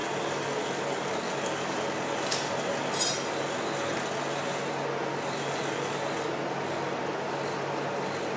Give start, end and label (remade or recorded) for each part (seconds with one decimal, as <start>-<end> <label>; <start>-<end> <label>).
0.0-8.4 recorded